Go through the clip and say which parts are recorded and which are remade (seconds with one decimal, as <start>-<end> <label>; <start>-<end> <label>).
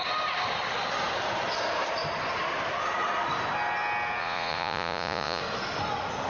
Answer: 0.0-4.2 recorded; 4.2-5.4 remade; 5.4-6.3 recorded